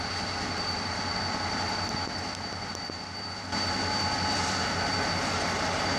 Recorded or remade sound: recorded